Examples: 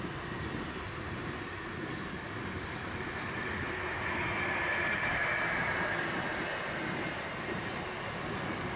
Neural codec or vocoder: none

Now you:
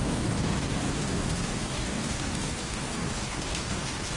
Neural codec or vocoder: codec, DAC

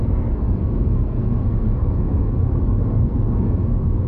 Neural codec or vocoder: codec, SNAC